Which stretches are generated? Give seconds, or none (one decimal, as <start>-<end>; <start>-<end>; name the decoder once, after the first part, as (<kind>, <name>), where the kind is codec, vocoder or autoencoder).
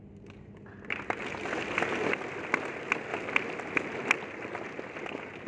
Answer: none